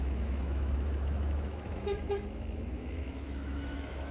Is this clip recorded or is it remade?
remade